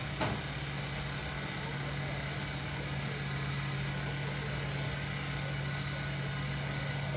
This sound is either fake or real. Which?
real